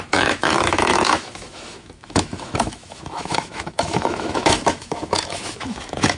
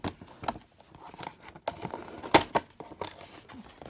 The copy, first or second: first